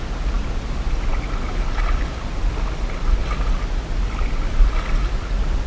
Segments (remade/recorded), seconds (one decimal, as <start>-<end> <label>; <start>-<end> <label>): 0.0-5.7 recorded